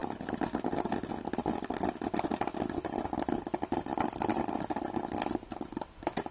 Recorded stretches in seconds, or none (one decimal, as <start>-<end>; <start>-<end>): 0.0-6.3